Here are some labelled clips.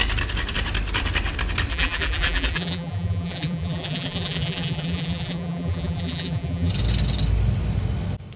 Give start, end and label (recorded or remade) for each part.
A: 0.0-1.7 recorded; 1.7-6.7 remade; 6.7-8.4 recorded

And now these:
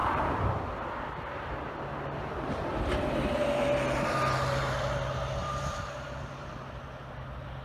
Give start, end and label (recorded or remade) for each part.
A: 0.0-5.4 recorded; 5.4-6.5 remade; 6.5-7.6 recorded

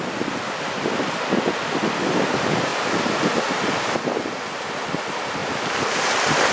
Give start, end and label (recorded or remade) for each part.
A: 0.0-6.5 recorded